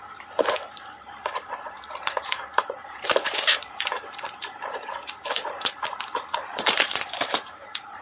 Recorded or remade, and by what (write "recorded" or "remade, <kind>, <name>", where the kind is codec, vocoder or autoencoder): remade, vocoder, BigVGAN v2